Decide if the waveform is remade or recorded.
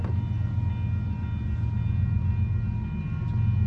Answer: recorded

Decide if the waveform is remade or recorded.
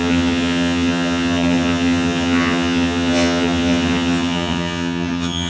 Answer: remade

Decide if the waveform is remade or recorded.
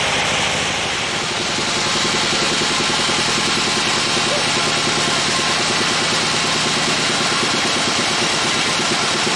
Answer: recorded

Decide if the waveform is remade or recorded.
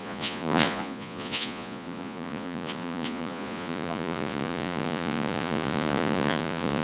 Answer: remade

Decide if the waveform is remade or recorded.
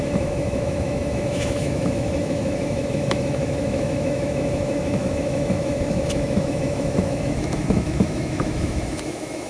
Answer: remade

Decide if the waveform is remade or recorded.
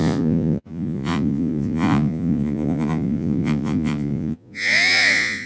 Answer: remade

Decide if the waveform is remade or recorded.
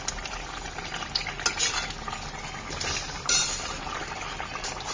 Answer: recorded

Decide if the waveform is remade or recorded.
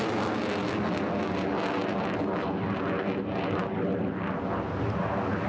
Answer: recorded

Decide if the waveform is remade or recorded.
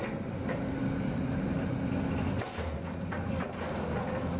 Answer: recorded